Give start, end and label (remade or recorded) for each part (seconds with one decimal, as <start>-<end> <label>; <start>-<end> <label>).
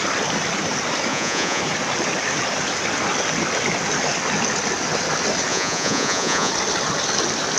0.0-1.1 recorded; 1.1-1.6 remade; 1.6-5.5 recorded; 5.5-6.5 remade; 6.5-7.6 recorded